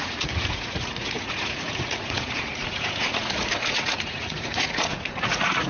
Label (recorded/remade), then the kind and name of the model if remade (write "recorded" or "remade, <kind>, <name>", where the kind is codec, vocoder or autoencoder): remade, vocoder, Vocos